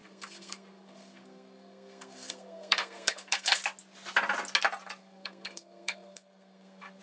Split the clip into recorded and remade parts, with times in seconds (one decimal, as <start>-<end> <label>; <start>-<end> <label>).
0.0-3.6 remade; 3.6-5.0 recorded; 5.0-7.0 remade

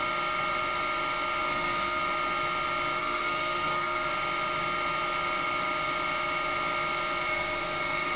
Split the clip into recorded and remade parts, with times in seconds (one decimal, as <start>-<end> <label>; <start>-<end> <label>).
0.0-1.5 recorded; 1.5-2.0 remade; 2.0-3.0 recorded; 3.0-4.1 remade; 4.1-8.2 recorded

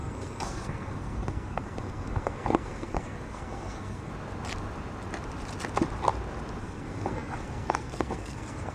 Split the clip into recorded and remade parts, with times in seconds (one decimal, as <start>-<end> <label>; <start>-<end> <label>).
0.0-4.1 remade; 4.1-6.6 recorded; 6.6-8.7 remade

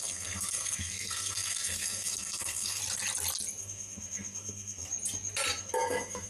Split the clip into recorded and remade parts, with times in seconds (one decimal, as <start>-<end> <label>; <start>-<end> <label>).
0.0-2.8 remade; 2.8-3.6 recorded; 3.6-4.9 remade; 4.9-5.6 recorded; 5.6-6.3 remade